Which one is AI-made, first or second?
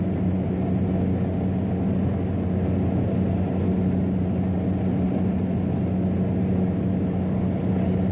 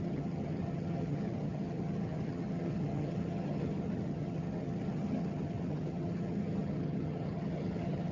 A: second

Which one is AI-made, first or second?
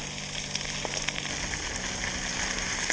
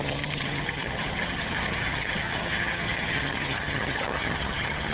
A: second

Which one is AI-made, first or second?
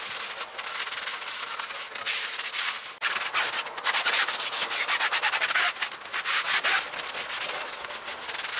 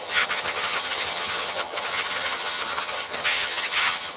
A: second